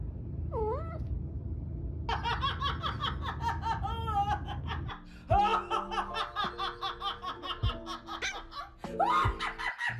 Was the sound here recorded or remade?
recorded